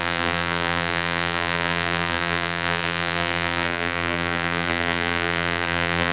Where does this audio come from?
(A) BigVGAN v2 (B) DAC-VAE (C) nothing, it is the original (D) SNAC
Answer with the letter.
A